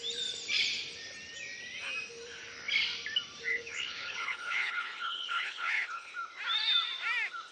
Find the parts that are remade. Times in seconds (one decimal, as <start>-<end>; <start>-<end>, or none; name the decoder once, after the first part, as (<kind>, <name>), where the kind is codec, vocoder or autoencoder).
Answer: 3.5-6.1 (codec, HILCodec)